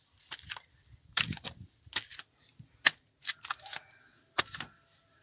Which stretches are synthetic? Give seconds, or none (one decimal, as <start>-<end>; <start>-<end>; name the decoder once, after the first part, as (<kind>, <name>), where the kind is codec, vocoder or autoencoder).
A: 0.0-2.1 (vocoder, BigVGAN v2); 4.4-5.2